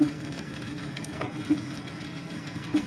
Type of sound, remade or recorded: remade